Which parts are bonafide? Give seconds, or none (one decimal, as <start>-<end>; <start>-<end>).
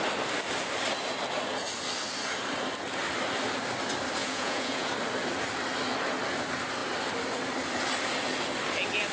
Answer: 0.0-4.2; 4.9-9.1